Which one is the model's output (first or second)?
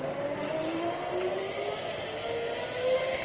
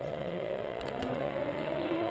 second